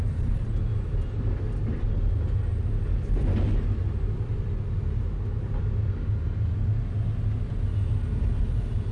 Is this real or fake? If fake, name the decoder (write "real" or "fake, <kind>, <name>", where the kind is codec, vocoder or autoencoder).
real